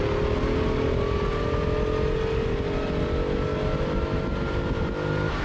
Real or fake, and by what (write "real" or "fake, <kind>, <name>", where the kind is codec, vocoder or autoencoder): real